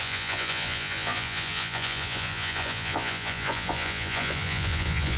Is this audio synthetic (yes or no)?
yes